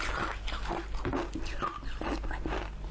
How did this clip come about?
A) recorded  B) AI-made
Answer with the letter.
A